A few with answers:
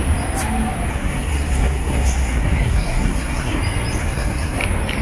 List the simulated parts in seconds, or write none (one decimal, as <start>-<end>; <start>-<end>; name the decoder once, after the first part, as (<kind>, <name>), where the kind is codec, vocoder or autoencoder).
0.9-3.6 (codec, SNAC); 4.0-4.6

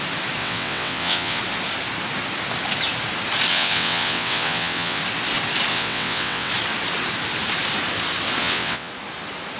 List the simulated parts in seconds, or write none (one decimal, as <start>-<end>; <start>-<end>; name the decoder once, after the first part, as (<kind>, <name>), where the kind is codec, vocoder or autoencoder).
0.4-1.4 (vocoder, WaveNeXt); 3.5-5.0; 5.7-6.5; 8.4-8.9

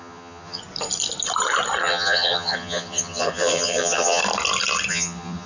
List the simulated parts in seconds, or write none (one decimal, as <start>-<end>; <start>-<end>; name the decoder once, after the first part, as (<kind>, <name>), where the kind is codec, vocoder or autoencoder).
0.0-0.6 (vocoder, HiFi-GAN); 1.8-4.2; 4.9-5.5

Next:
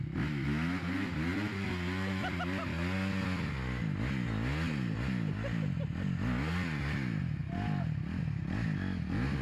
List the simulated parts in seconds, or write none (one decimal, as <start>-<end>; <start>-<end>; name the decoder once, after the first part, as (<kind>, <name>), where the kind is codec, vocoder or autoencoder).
1.3-2.3 (vocoder, BigVGAN v2); 7.4-8.2

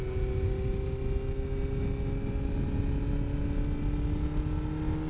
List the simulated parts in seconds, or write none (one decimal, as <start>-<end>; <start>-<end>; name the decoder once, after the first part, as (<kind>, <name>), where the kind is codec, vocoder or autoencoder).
none

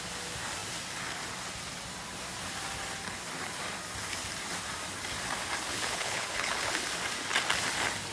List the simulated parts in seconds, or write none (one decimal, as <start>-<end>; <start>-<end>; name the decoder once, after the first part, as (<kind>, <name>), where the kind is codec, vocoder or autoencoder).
5.7-6.8 (codec, HILCodec)

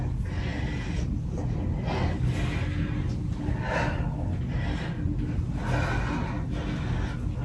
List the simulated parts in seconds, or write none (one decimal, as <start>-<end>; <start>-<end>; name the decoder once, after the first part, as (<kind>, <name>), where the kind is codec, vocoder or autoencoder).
none

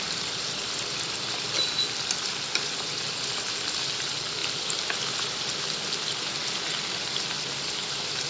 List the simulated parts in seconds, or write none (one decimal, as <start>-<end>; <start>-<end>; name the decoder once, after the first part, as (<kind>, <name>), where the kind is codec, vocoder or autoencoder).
none